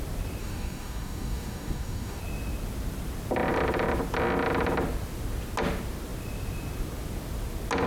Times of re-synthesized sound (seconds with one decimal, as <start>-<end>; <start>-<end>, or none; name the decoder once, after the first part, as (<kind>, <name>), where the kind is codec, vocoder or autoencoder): 0.4-2.2 (codec, DAC)